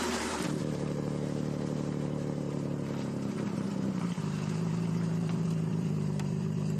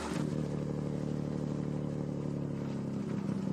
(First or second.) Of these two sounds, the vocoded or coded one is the first